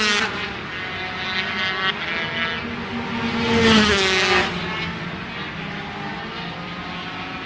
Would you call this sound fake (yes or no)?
no